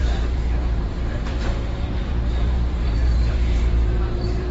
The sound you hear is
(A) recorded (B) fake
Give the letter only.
B